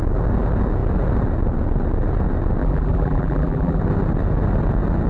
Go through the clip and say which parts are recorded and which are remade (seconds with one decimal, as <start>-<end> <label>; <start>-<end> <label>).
0.0-2.6 recorded; 2.6-3.8 remade; 3.8-5.1 recorded